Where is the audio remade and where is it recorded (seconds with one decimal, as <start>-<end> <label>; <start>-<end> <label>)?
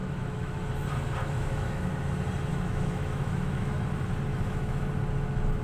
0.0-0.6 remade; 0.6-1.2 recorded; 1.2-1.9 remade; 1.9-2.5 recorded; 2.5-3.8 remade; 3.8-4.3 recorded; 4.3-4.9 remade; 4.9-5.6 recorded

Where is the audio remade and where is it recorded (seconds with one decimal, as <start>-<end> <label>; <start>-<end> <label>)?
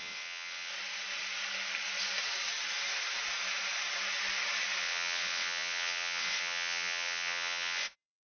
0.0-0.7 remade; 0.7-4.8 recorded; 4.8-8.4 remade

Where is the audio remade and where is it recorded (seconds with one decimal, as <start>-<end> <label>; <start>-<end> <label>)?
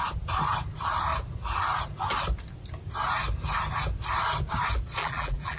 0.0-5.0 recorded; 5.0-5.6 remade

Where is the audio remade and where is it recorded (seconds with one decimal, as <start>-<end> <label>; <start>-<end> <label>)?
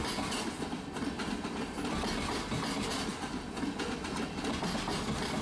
0.0-5.4 recorded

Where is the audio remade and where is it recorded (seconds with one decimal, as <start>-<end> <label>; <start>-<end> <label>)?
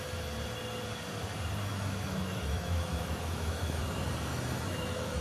0.0-1.7 recorded; 1.7-3.8 remade; 3.8-4.3 recorded; 4.3-5.2 remade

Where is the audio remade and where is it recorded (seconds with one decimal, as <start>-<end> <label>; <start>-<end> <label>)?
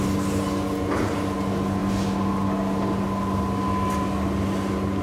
0.0-5.0 recorded